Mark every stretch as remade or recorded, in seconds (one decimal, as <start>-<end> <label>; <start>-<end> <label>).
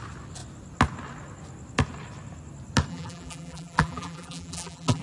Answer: 0.0-2.9 recorded; 2.9-5.0 remade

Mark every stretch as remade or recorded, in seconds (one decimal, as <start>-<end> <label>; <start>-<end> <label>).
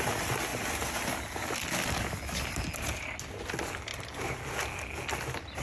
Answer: 0.0-5.6 recorded